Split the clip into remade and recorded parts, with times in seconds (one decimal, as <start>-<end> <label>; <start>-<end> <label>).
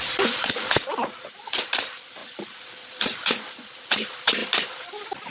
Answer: 0.0-5.3 recorded